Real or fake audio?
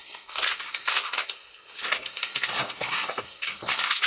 fake